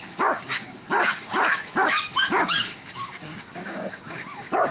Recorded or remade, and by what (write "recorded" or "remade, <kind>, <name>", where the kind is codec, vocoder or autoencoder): remade, codec, DAC